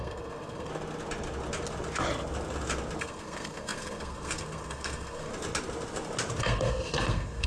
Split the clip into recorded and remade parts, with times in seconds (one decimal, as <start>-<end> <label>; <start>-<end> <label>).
0.0-0.7 remade; 0.7-3.0 recorded; 3.0-5.3 remade; 5.3-6.4 recorded; 6.4-7.5 remade